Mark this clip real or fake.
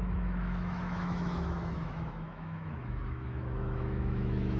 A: fake